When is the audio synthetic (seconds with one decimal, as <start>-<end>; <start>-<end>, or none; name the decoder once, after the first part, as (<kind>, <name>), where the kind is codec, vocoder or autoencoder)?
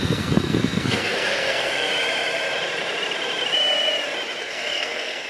0.0-1.9 (codec, SNAC); 4.4-5.3